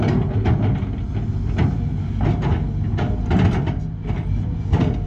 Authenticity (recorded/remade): recorded